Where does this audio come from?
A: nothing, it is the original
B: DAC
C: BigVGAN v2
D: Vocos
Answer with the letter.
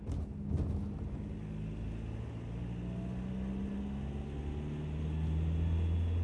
A